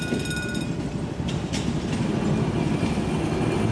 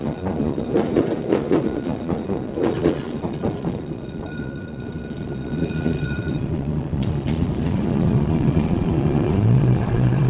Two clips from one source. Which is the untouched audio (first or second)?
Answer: first